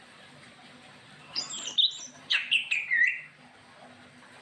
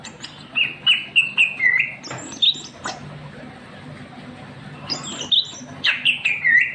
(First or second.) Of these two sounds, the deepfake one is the first